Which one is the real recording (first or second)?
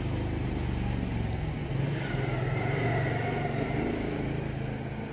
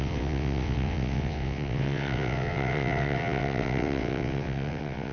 first